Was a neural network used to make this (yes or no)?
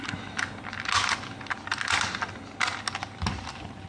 no